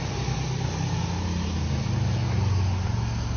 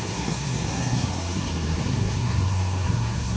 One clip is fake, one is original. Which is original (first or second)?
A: first